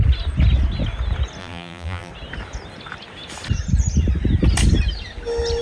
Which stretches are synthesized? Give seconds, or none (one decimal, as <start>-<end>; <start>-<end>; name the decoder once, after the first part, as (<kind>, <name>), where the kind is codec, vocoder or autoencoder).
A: 1.4-2.1 (vocoder, BigVGAN v2)